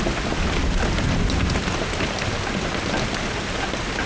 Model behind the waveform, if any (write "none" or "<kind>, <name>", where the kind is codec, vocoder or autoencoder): none